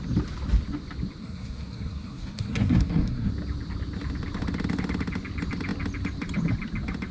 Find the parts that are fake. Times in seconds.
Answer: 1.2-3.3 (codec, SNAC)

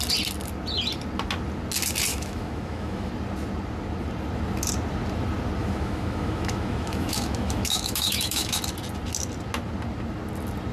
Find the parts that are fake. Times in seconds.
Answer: 2.1-3.1 (autoencoder, DAC-VAE); 5.6-8.6